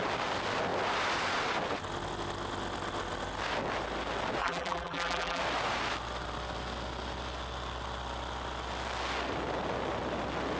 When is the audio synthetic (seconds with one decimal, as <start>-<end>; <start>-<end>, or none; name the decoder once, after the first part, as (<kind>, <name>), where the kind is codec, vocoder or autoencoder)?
4.4-5.4 (vocoder, BigVGAN v2)